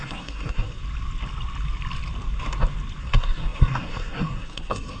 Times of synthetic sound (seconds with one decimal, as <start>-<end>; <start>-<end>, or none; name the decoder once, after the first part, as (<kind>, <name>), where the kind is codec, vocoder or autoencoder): 0.0-0.8 (codec, SNAC); 3.0-5.0

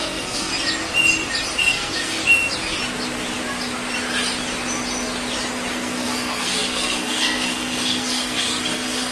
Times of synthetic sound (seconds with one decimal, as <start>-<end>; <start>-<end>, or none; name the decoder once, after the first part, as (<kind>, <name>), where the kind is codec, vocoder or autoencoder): 0.0-0.5 (codec, SNAC); 1.6-2.2; 5.7-9.1

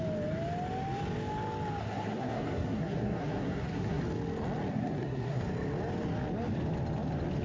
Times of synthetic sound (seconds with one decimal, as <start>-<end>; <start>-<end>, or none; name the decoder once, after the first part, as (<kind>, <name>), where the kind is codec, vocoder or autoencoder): 1.8-4.0 (codec, SNAC); 4.7-5.4

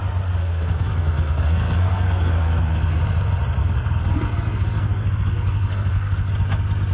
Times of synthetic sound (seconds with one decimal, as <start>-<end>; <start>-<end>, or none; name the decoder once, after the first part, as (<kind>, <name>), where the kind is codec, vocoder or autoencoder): 0.4-3.0 (codec, SNAC); 3.6-6.3

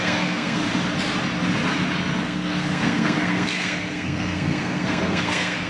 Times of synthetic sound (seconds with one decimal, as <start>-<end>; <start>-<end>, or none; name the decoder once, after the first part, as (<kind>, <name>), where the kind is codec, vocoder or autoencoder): 0.0-0.6 (codec, SNAC); 2.2-5.7